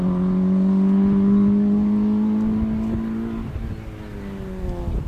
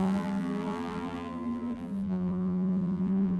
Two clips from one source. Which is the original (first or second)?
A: first